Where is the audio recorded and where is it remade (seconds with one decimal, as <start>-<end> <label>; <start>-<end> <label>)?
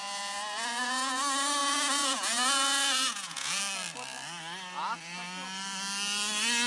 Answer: 0.0-1.2 remade; 1.2-1.6 recorded; 1.6-3.6 remade; 3.6-6.7 recorded